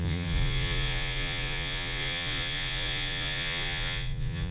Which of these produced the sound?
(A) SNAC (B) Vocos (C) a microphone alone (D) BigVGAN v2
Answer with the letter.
B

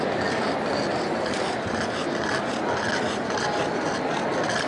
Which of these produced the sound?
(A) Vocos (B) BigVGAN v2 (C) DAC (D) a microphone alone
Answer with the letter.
D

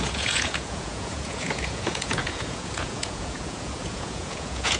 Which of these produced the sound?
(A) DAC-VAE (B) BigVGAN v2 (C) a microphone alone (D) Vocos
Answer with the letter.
D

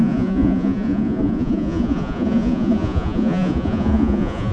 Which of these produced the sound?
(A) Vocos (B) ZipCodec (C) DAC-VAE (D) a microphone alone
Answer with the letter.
A